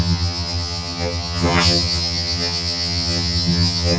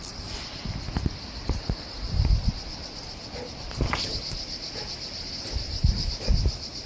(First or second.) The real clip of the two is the second